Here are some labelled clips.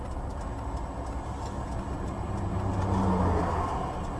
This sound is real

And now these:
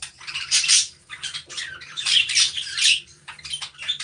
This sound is fake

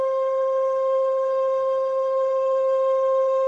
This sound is fake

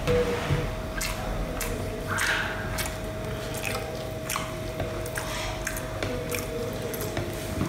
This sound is real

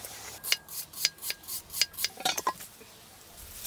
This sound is fake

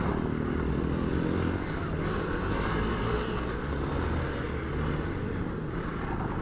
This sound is real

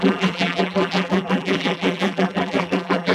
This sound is fake